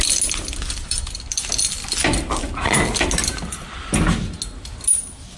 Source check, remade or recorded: recorded